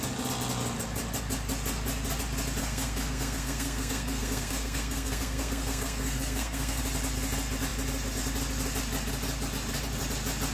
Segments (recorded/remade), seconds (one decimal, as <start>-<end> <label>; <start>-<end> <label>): 0.0-2.6 recorded; 2.6-6.8 remade; 6.8-10.5 recorded